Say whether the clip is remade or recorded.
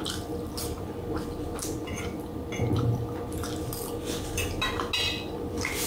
recorded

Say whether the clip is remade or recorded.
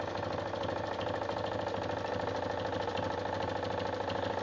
recorded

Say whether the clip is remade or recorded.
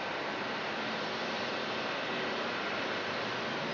recorded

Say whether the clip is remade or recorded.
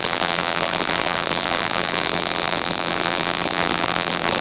remade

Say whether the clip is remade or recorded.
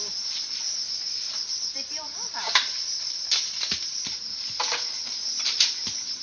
remade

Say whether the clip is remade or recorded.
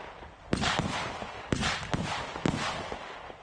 recorded